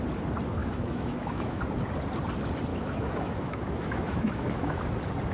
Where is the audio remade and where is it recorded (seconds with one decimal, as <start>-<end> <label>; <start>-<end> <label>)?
0.0-0.6 recorded; 0.6-1.6 remade; 1.6-2.7 recorded; 2.7-4.8 remade; 4.8-5.3 recorded